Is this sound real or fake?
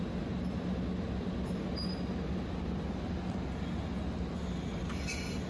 real